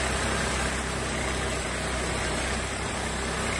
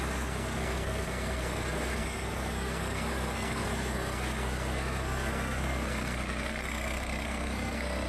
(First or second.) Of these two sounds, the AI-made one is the second